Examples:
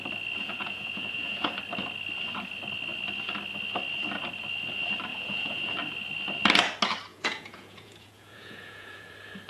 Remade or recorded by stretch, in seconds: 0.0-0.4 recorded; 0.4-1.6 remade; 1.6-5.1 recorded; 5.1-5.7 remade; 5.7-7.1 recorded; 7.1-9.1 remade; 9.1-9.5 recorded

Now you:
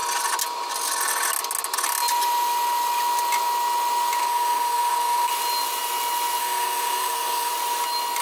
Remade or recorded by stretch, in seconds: 0.0-4.2 recorded; 4.2-5.3 remade; 5.3-6.4 recorded; 6.4-7.5 remade; 7.5-8.2 recorded

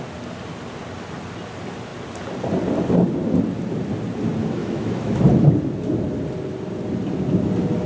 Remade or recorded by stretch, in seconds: 0.0-4.6 recorded; 4.6-5.2 remade; 5.2-7.9 recorded

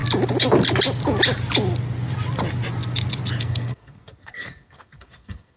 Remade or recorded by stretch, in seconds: 0.0-3.4 recorded; 3.4-5.6 remade

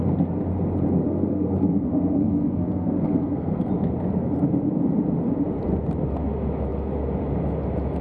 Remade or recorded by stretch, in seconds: 0.0-1.0 recorded; 1.0-3.7 remade; 3.7-8.0 recorded

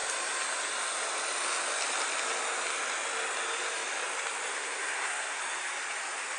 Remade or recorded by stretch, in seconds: 0.0-4.5 recorded; 4.5-5.4 remade; 5.4-6.4 recorded

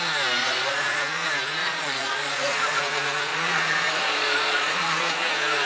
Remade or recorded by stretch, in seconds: 0.0-0.4 recorded; 0.4-1.0 remade; 1.0-1.6 recorded; 1.6-2.8 remade; 2.8-3.3 recorded; 3.3-5.0 remade; 5.0-5.7 recorded